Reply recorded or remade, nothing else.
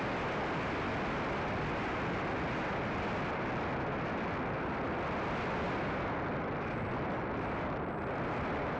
recorded